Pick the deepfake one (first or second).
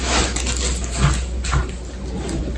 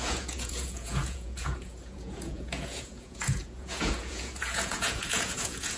second